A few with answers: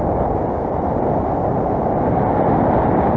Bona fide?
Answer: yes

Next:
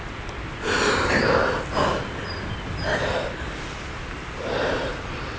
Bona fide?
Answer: yes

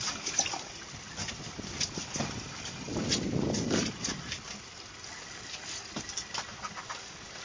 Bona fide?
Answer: yes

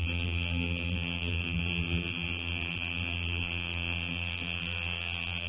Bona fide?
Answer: no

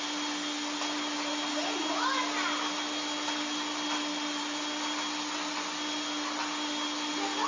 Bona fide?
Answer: yes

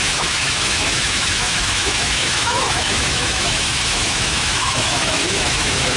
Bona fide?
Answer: no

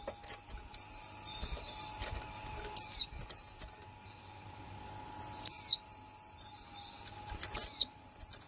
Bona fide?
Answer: yes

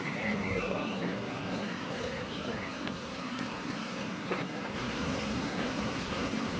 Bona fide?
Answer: no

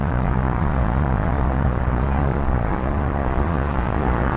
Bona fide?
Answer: no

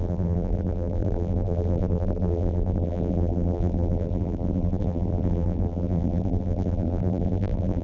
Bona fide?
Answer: no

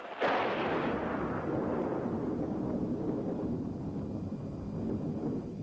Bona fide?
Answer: yes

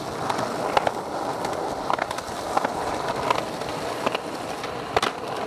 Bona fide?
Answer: yes